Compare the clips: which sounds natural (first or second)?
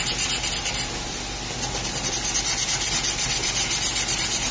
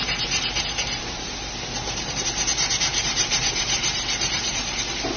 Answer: first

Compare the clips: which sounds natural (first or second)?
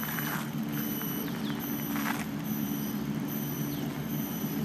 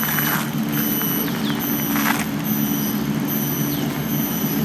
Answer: second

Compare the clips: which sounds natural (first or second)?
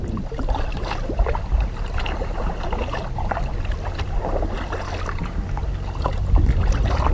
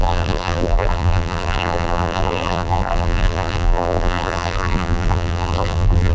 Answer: first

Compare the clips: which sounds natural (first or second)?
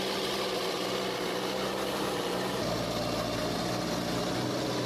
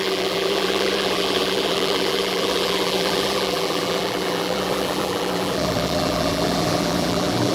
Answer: first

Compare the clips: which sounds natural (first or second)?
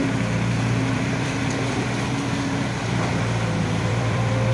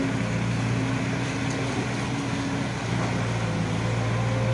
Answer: second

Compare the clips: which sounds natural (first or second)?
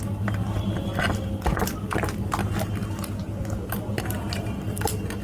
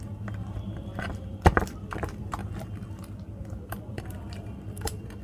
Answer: first